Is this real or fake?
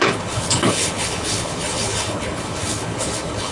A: fake